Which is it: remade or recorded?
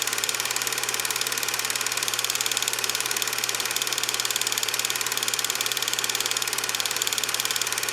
remade